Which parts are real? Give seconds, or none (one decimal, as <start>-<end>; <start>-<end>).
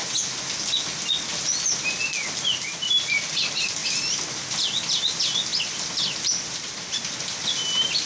0.0-8.1